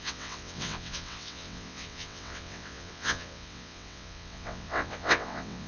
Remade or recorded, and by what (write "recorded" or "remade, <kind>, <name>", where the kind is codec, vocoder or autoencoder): remade, vocoder, WaveNeXt